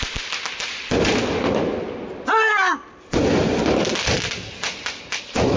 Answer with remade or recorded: recorded